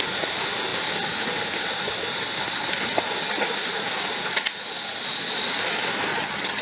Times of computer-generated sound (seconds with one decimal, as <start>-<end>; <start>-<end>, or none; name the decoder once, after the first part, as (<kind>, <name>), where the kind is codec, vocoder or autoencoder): 6.1-6.6 (vocoder, HiFi-GAN)